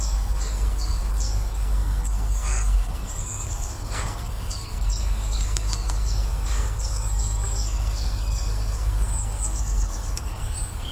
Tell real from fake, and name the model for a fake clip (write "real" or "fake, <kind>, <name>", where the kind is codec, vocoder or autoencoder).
fake, codec, SNAC